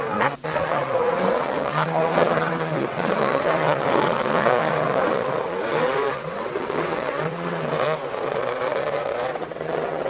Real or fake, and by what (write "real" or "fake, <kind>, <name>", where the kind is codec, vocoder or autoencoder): fake, vocoder, WaveNeXt